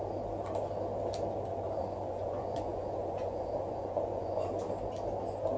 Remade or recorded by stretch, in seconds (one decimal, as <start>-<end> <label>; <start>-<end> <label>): 0.0-1.8 recorded; 1.8-4.5 remade; 4.5-5.6 recorded